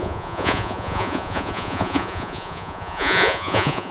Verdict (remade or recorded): remade